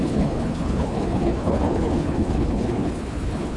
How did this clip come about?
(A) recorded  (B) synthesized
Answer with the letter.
B